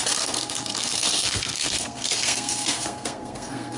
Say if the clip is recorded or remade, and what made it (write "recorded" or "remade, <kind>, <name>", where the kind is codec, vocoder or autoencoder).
remade, codec, SNAC